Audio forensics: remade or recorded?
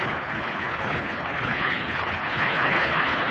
remade